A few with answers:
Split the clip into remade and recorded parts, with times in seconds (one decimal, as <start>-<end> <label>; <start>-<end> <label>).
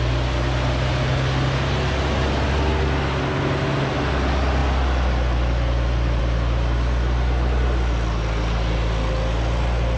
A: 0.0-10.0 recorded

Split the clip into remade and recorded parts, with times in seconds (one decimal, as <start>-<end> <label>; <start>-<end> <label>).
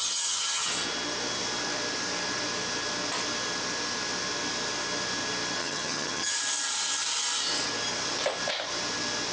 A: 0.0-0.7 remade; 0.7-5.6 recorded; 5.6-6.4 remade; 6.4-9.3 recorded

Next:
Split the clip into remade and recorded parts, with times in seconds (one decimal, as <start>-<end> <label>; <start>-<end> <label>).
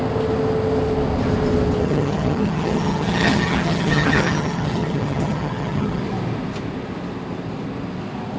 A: 0.0-1.8 recorded; 1.8-6.0 remade; 6.0-8.4 recorded